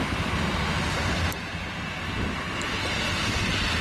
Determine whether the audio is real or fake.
real